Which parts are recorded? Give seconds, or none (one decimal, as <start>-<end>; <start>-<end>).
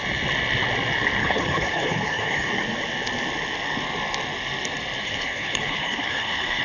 0.0-1.2; 2.5-5.0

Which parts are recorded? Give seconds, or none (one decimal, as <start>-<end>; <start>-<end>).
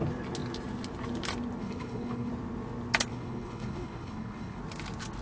0.0-1.6; 2.3-3.1; 4.6-5.2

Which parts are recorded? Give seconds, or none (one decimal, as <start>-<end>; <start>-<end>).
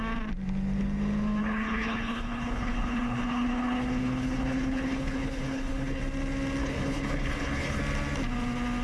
0.0-1.4; 6.0-6.6; 7.8-8.8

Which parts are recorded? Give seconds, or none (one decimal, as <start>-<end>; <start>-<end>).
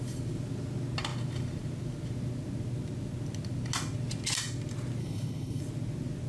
0.0-5.0; 5.6-6.3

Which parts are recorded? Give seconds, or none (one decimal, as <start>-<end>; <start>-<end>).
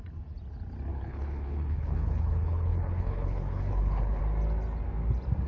0.0-0.9; 4.2-5.5